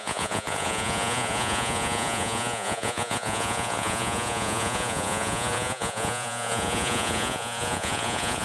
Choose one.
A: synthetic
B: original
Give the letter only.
A